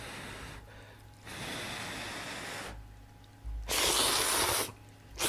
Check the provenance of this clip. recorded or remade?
recorded